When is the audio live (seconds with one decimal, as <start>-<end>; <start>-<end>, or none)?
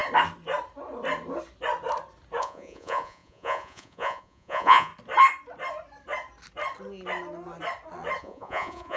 0.0-2.4; 4.9-8.2